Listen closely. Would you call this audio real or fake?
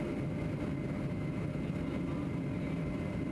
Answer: real